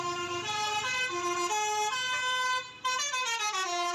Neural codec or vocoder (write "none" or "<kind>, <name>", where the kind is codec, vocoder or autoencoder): none